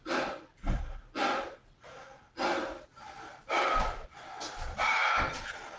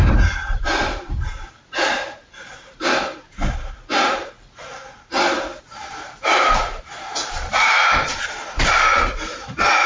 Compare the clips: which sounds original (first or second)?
first